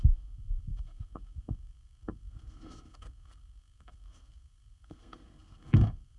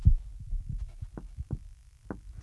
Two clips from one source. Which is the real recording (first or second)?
second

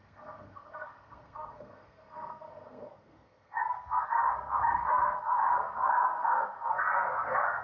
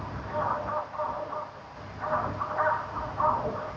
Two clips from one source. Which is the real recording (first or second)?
second